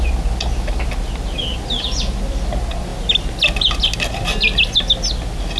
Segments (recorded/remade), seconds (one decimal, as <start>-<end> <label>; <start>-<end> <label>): 0.0-5.6 recorded